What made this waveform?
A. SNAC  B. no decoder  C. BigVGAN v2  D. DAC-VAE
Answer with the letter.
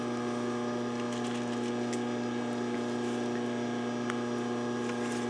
B